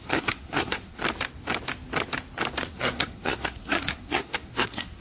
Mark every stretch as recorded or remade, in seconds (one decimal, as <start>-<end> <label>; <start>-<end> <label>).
0.0-1.0 remade; 1.0-2.7 recorded; 2.7-5.0 remade